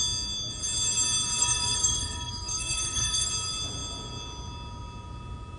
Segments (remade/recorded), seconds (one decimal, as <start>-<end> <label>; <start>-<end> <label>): 0.0-1.4 recorded; 1.4-3.3 remade; 3.3-5.6 recorded